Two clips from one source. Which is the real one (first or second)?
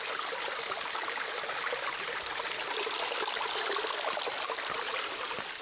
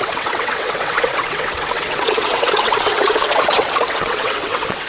first